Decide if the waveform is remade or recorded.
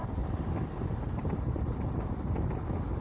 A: recorded